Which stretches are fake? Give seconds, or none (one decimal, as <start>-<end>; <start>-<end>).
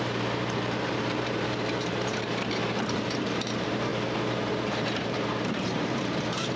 0.0-3.9; 4.5-6.6